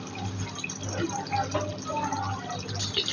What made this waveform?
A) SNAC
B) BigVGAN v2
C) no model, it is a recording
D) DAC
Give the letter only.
C